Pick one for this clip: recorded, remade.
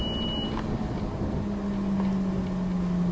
recorded